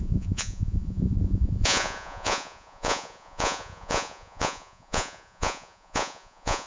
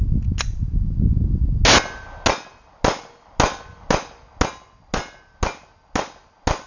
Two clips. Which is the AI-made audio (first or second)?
first